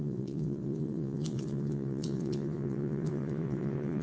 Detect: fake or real fake